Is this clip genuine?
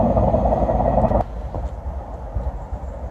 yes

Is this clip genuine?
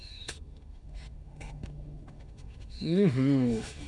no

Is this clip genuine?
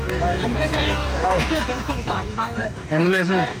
no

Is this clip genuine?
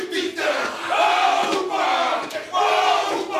yes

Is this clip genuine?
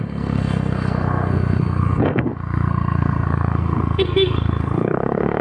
no